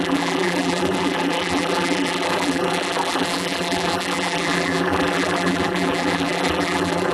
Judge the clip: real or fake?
fake